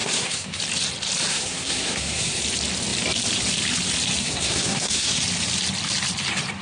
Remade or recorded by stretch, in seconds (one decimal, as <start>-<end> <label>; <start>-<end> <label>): 0.0-0.6 remade; 0.6-1.3 recorded; 1.3-2.4 remade; 2.4-4.2 recorded; 4.2-5.2 remade; 5.2-6.6 recorded